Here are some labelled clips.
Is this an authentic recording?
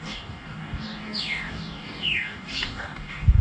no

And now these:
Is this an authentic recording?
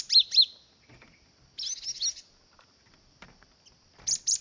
yes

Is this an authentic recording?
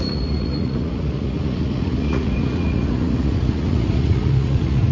no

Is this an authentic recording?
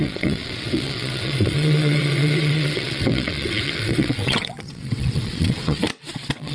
no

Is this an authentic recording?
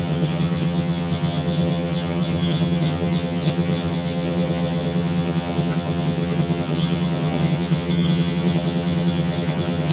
no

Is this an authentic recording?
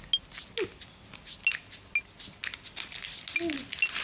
yes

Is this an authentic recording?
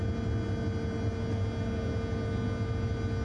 yes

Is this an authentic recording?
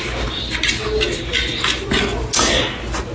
yes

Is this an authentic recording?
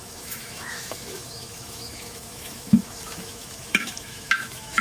no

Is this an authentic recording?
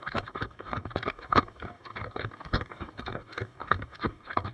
no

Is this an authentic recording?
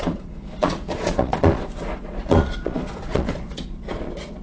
no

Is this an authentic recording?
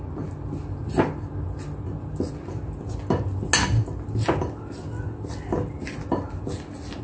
yes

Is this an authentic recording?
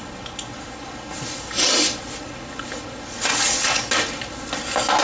yes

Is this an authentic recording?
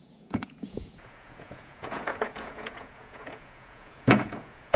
no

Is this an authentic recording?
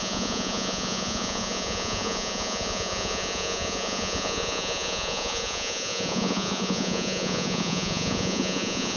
no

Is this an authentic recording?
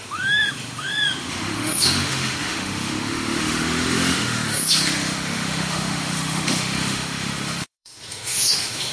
no